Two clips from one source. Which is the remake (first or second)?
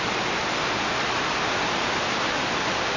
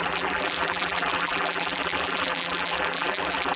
second